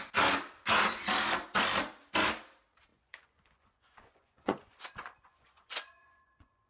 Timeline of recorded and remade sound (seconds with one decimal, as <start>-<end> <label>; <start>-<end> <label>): 0.0-2.9 recorded; 2.9-6.7 remade